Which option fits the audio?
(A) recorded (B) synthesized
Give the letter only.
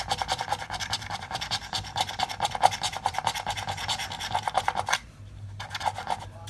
B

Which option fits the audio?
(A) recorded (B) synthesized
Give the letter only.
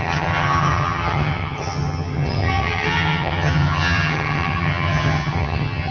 B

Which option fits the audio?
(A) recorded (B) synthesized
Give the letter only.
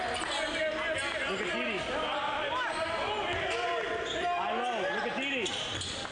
A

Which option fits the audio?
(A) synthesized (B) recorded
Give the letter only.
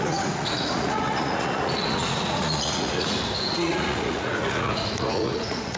A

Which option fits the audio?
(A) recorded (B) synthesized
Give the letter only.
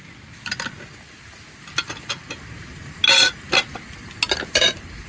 A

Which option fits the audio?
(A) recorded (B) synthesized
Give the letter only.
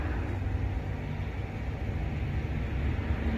A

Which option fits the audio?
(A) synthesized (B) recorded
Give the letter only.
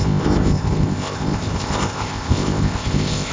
A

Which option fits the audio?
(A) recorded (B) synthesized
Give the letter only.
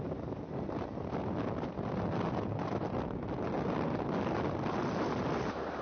A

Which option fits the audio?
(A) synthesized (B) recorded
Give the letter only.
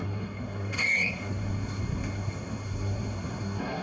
A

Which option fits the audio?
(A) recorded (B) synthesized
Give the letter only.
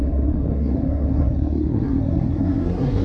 B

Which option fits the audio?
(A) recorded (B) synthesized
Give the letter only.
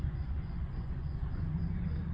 B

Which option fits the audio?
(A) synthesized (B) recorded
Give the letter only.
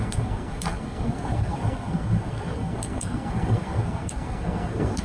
A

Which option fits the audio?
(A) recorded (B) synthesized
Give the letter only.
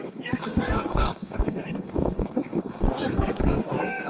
B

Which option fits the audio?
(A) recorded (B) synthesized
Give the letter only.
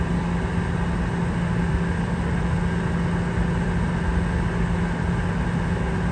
A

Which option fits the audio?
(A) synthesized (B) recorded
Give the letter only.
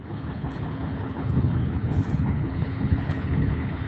A